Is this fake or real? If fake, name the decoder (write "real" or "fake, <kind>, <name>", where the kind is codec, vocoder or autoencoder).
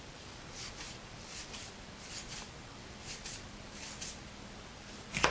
real